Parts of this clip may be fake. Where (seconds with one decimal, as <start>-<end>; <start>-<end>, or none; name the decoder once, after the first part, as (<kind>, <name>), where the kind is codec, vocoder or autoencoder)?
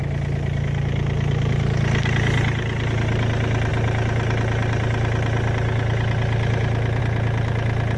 none